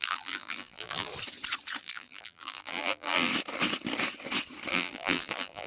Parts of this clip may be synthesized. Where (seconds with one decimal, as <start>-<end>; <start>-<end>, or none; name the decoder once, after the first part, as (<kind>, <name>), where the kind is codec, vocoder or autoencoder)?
0.0-1.1 (vocoder, BigVGAN v2); 1.8-3.3; 4.7-5.7